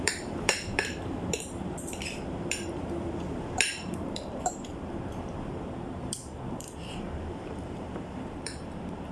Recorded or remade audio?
remade